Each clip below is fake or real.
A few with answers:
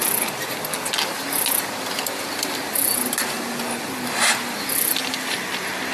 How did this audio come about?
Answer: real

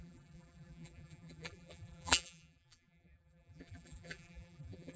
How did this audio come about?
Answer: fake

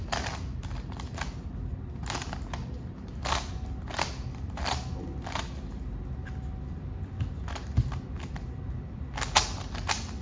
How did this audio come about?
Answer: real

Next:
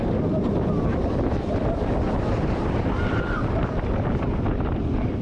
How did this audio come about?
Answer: fake